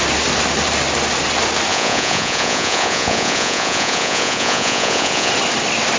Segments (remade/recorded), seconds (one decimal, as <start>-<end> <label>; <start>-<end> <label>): 0.0-1.7 recorded; 1.7-5.3 remade; 5.3-6.0 recorded